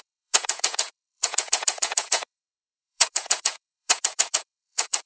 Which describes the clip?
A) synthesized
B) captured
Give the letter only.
A